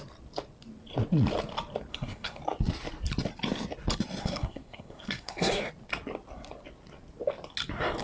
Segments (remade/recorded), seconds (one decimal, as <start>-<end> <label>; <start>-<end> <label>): 0.0-1.9 recorded; 1.9-2.4 remade; 2.4-4.2 recorded; 4.2-5.6 remade; 5.6-8.0 recorded